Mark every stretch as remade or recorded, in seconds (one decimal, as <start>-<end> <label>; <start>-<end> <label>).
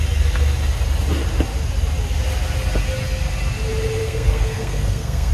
0.0-4.0 recorded; 4.0-5.3 remade